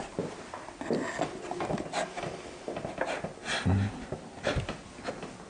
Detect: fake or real real